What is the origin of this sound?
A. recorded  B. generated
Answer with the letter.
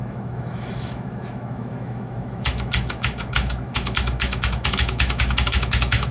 B